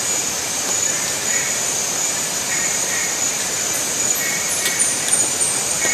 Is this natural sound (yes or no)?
no